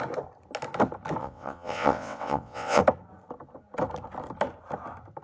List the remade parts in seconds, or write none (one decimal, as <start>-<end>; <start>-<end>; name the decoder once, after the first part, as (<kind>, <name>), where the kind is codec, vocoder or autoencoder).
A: 1.2-2.8 (vocoder, WaveNeXt)